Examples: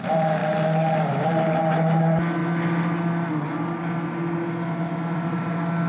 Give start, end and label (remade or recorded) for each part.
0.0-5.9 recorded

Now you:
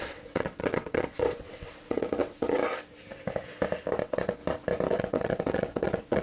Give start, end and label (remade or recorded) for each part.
0.0-2.6 remade; 2.6-4.0 recorded; 4.0-4.4 remade; 4.4-4.9 recorded; 4.9-6.2 remade

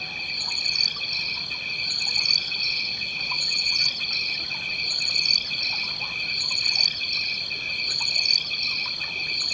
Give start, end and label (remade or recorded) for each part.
0.0-2.4 recorded; 2.4-3.9 remade; 3.9-9.5 recorded

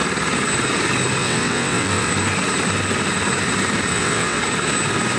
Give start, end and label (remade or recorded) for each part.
0.0-1.2 recorded; 1.2-2.1 remade; 2.1-3.9 recorded; 3.9-4.4 remade; 4.4-5.2 recorded

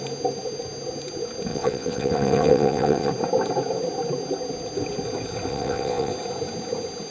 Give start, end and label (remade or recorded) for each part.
0.0-1.5 recorded; 1.5-3.1 remade; 3.1-5.5 recorded; 5.5-6.1 remade; 6.1-7.1 recorded

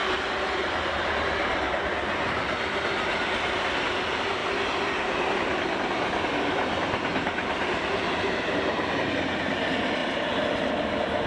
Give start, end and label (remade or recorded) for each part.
0.0-11.3 recorded

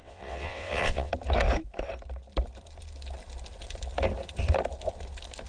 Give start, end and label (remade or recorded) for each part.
0.0-1.1 remade; 1.1-5.5 recorded

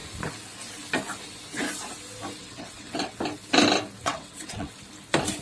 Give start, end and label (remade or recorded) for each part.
0.0-2.4 recorded; 2.4-3.2 remade; 3.2-4.0 recorded; 4.0-4.7 remade; 4.7-5.4 recorded